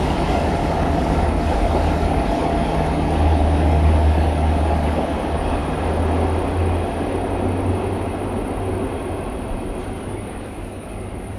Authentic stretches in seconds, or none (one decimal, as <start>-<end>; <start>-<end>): 5.6-10.0